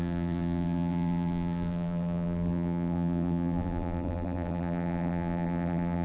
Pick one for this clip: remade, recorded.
remade